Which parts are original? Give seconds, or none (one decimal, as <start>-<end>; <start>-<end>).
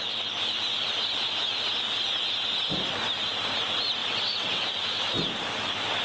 0.0-4.0; 4.7-6.0